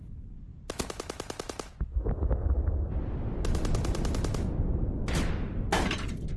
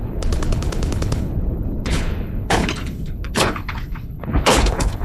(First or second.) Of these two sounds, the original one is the first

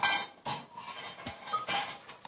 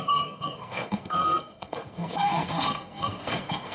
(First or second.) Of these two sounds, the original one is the first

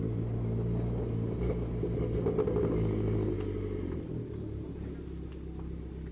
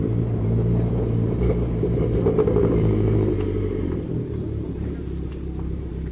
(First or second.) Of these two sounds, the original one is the first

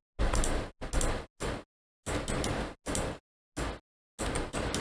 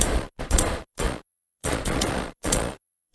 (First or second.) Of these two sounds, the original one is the first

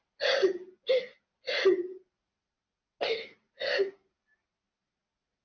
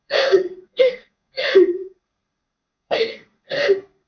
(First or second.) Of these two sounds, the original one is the first